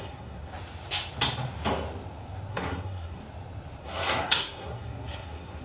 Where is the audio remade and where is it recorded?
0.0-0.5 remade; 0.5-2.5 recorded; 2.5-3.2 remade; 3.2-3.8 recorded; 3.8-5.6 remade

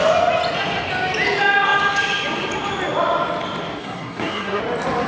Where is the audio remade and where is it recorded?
0.0-3.8 recorded; 3.8-4.6 remade; 4.6-5.1 recorded

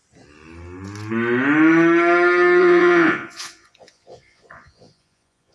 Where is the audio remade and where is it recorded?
0.0-2.6 recorded; 2.6-5.5 remade